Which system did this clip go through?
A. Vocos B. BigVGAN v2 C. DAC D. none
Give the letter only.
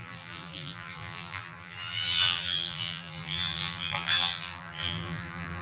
B